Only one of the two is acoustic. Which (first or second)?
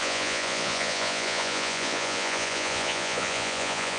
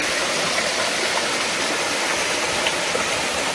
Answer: second